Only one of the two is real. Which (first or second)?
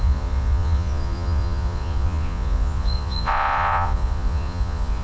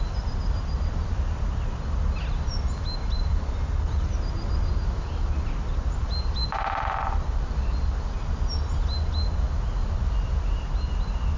second